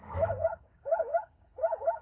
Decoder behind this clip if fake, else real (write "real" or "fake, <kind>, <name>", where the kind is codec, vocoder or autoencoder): fake, codec, DAC